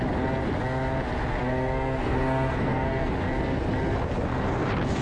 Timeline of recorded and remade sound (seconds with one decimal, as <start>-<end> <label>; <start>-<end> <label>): 0.0-1.4 recorded; 1.4-3.1 remade; 3.1-5.0 recorded